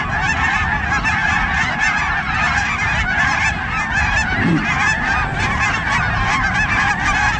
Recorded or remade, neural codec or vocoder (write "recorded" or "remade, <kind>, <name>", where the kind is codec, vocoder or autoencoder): recorded